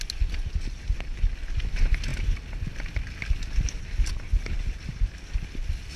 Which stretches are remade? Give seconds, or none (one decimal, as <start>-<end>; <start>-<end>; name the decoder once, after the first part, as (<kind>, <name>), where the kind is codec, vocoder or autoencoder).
none